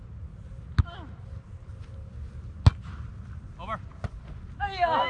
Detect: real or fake real